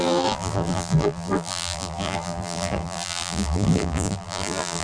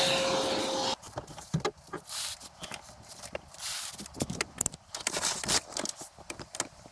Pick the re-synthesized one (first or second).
first